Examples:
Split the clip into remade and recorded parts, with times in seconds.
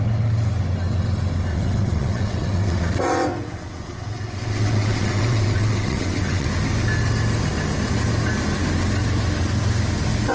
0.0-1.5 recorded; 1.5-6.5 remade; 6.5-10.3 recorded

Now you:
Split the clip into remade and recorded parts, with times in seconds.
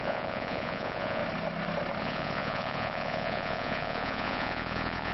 0.0-1.2 remade; 1.2-2.0 recorded; 2.0-5.1 remade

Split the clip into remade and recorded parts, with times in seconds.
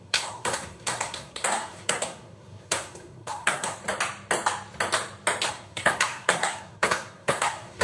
0.0-3.8 remade; 3.8-5.5 recorded; 5.5-7.8 remade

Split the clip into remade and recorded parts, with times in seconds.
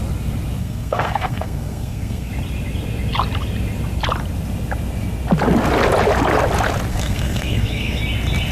0.0-0.6 recorded; 0.6-2.3 remade; 2.3-6.9 recorded; 6.9-8.0 remade; 8.0-8.5 recorded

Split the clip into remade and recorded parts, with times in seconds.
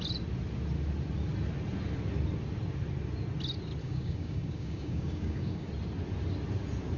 0.0-3.8 recorded; 3.8-5.7 remade; 5.7-7.0 recorded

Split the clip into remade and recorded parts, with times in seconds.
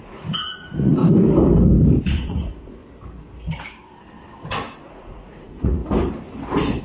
0.0-1.0 remade; 1.0-2.0 recorded; 2.0-2.8 remade; 2.8-4.9 recorded; 4.9-5.8 remade; 5.8-6.8 recorded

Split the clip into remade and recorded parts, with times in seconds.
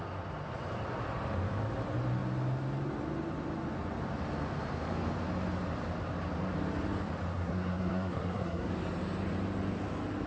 0.0-7.3 recorded; 7.3-8.7 remade; 8.7-10.3 recorded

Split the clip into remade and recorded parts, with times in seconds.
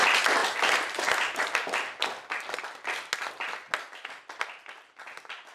0.0-5.5 recorded